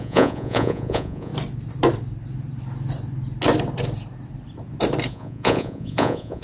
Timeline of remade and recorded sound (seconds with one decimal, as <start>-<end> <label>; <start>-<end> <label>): 0.0-1.3 remade; 1.3-5.1 recorded; 5.1-6.4 remade